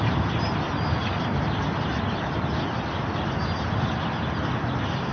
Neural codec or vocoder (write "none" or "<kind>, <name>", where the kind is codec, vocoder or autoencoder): none